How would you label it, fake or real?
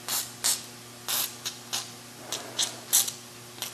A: real